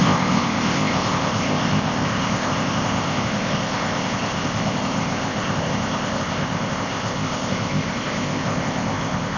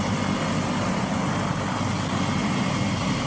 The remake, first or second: first